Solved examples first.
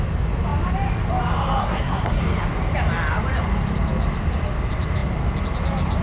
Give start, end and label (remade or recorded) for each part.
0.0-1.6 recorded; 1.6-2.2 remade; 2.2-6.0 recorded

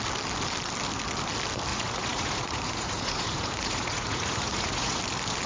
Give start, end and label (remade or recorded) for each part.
0.0-1.7 recorded; 1.7-5.0 remade; 5.0-5.5 recorded

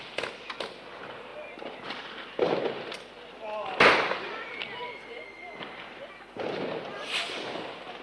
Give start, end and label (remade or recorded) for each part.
0.0-8.0 recorded

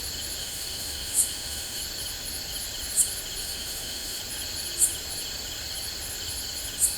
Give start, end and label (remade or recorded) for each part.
0.0-0.4 recorded; 0.4-1.8 remade; 1.8-3.4 recorded; 3.4-4.2 remade; 4.2-7.0 recorded

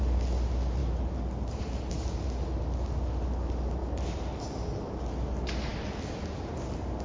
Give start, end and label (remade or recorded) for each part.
0.0-7.0 recorded

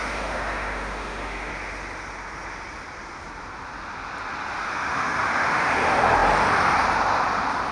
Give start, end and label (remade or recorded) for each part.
0.0-1.5 remade; 1.5-4.7 recorded; 4.7-5.7 remade; 5.7-7.7 recorded

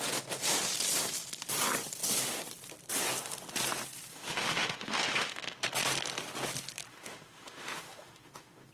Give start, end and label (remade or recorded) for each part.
0.0-4.1 recorded; 4.1-5.6 remade; 5.6-6.9 recorded; 6.9-8.7 remade

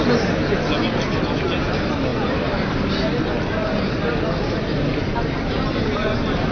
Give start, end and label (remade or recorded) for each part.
0.0-6.5 recorded